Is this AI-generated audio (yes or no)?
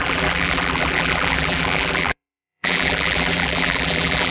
yes